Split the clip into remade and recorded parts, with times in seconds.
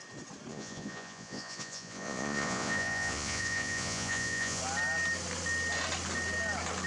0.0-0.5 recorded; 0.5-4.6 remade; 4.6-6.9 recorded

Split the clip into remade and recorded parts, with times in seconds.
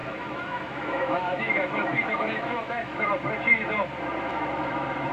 0.0-3.1 remade; 3.1-4.3 recorded; 4.3-5.1 remade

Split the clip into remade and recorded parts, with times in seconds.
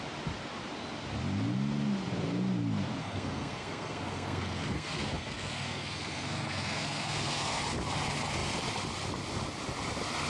0.0-3.0 recorded; 3.0-7.6 remade; 7.6-10.3 recorded